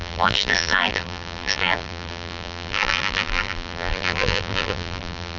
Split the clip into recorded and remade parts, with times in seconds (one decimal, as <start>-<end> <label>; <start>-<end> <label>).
0.0-5.4 remade